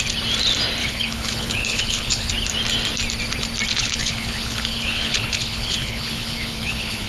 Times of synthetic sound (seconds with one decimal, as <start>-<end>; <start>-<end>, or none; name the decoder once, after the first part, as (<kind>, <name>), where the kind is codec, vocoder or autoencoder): 0.8-2.3 (codec, HILCodec); 3.7-7.1